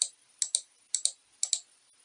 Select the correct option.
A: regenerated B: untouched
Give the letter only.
B